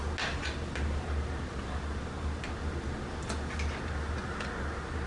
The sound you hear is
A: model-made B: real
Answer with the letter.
B